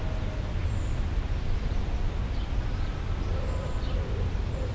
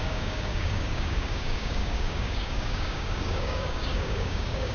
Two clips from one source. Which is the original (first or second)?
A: first